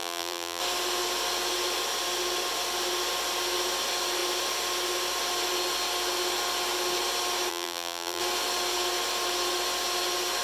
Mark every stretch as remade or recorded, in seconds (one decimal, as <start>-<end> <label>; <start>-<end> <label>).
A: 0.0-0.6 remade; 0.6-7.5 recorded; 7.5-8.2 remade; 8.2-10.4 recorded